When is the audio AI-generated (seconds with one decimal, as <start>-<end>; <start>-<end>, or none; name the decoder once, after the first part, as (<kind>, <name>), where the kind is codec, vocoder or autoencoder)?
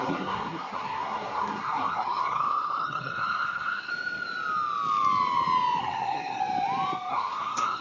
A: 0.0-3.9 (codec, SNAC); 5.8-6.4; 7.1-7.8